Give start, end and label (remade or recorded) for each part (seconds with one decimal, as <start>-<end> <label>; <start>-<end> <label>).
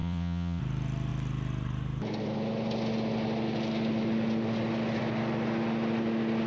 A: 0.0-0.6 remade; 0.6-6.5 recorded